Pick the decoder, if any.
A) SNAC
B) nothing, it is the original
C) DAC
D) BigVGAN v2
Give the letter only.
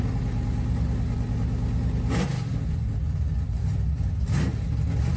B